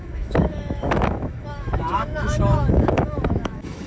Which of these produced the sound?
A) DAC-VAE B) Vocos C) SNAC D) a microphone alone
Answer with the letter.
A